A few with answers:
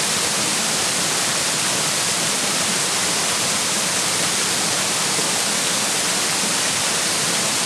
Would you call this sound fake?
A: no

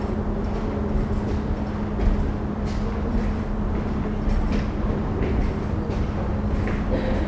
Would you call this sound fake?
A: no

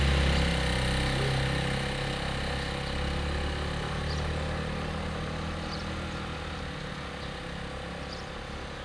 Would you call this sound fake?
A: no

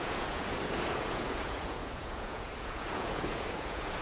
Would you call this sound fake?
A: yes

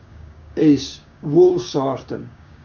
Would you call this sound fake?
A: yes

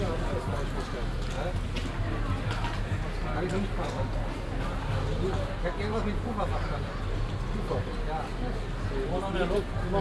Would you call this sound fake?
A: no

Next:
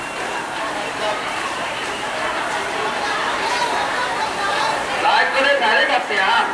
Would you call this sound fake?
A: yes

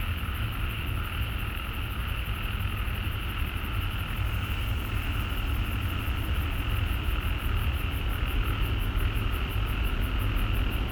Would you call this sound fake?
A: no